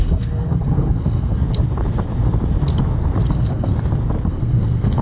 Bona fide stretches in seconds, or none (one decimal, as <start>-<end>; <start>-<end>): 1.4-3.3; 3.7-4.3